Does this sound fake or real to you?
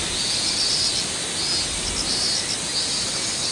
real